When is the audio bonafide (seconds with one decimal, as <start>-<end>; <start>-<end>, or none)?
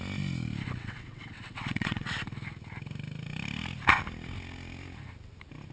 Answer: 0.0-0.8; 2.1-5.7